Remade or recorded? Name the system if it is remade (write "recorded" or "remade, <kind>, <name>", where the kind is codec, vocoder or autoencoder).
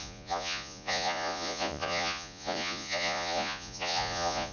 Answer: remade, vocoder, Vocos